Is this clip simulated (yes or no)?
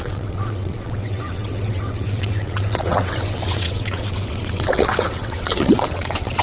yes